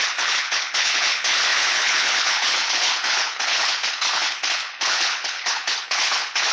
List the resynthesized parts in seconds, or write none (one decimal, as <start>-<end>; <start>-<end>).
0.0-6.5